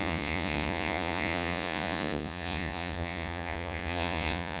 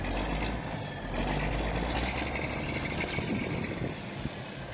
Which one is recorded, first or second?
second